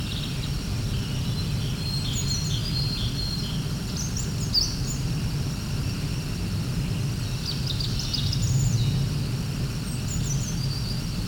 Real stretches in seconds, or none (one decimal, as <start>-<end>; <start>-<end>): 0.0-11.3